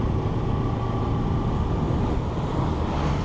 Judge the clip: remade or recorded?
recorded